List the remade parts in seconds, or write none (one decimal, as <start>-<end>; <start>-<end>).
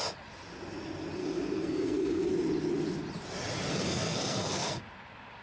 1.2-2.3; 3.7-4.8